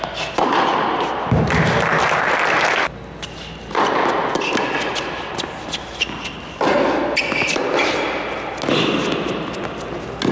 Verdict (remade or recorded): recorded